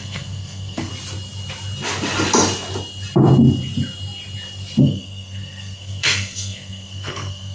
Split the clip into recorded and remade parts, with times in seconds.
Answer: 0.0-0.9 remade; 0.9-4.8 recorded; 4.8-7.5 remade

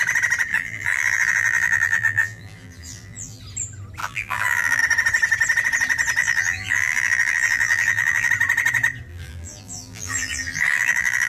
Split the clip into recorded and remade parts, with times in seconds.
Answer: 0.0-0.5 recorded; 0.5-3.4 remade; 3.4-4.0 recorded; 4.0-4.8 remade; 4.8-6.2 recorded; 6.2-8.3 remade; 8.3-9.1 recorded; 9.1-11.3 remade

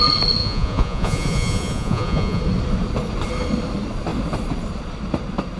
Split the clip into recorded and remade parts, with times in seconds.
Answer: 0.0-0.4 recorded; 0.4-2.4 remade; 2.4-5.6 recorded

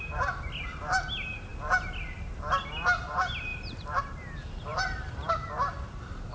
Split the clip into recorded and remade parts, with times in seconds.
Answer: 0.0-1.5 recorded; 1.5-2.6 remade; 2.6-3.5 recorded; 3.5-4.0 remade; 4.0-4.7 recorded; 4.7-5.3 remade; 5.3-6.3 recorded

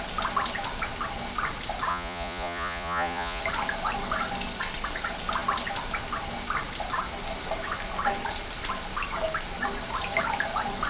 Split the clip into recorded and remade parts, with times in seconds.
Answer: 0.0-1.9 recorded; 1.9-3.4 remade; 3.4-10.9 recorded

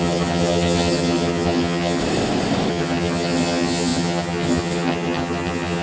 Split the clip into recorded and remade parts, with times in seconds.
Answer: 0.0-2.0 remade; 2.0-2.7 recorded; 2.7-5.8 remade

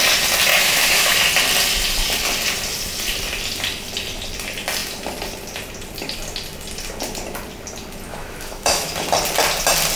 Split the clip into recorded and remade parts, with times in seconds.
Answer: 0.0-0.5 recorded; 0.5-1.2 remade; 1.2-8.1 recorded; 8.1-8.9 remade; 8.9-10.0 recorded